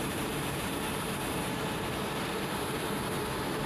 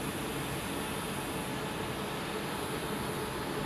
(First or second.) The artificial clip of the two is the first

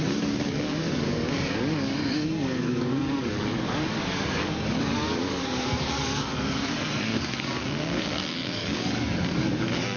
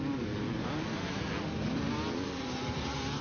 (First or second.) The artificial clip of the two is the first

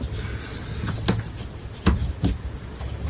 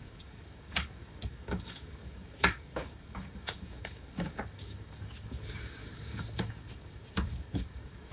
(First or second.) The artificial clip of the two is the second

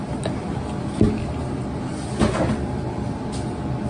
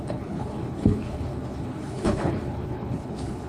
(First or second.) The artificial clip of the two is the second